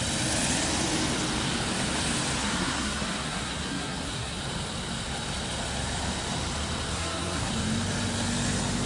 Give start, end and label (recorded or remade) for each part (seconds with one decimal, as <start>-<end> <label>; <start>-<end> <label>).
0.0-2.4 recorded; 2.4-4.4 remade; 4.4-6.9 recorded; 6.9-7.5 remade; 7.5-8.9 recorded